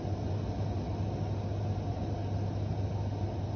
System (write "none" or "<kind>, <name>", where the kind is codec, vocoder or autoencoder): none